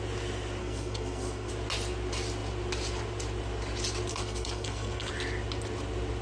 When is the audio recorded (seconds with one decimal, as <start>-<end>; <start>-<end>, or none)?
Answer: 0.0-0.6; 1.5-4.1; 5.1-6.2